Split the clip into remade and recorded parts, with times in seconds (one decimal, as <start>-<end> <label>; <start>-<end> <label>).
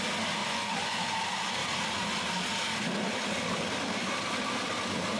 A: 0.0-0.4 recorded; 0.4-1.0 remade; 1.0-5.2 recorded